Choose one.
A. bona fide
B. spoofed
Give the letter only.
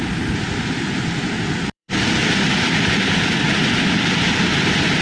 B